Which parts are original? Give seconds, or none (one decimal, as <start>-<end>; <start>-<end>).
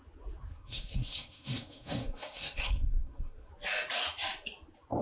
0.0-0.5; 3.5-5.0